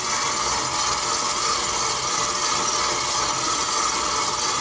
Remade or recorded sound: recorded